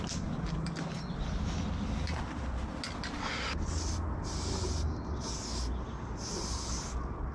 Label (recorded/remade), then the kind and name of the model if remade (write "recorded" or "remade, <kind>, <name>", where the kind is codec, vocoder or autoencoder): recorded